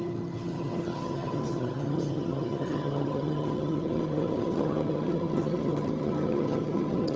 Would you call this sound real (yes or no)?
no